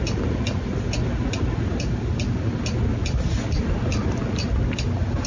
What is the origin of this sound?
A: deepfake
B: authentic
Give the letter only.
B